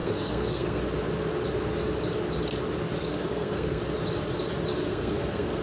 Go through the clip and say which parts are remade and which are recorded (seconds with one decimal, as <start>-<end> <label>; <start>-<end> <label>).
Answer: 0.0-0.8 remade; 0.8-3.0 recorded; 3.0-3.8 remade; 3.8-4.7 recorded; 4.7-5.6 remade